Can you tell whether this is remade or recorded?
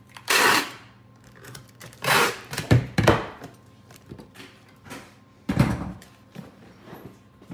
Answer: remade